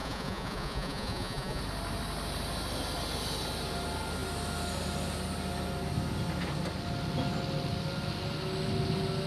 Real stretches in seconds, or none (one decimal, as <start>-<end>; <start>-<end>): 1.6-9.3